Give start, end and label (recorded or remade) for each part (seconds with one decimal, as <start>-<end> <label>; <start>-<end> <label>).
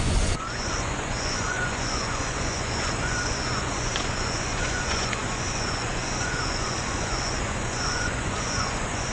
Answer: 0.0-9.1 remade